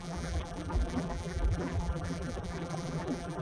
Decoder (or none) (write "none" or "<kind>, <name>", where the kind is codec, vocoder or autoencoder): vocoder, BigVGAN v2